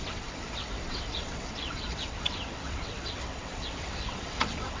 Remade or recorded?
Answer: remade